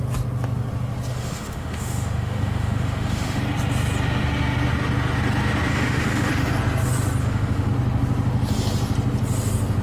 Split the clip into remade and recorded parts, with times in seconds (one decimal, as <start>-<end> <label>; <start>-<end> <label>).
0.0-1.1 recorded; 1.1-3.4 remade; 3.4-5.7 recorded; 5.7-6.3 remade; 6.3-7.2 recorded; 7.2-7.7 remade; 7.7-9.8 recorded